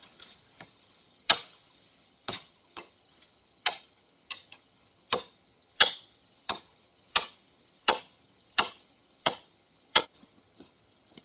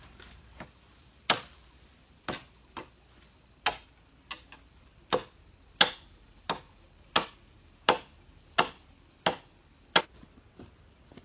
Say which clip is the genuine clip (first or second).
second